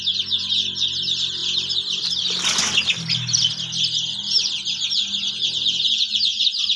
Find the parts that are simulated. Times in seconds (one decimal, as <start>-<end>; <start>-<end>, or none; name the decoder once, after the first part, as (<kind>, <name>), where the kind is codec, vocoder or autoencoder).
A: none